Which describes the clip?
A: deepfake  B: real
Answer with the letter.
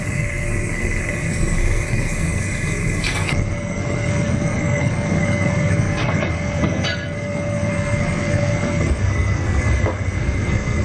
A